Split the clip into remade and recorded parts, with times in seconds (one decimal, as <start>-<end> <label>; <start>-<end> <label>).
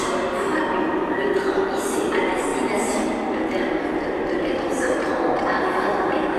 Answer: 0.0-6.4 recorded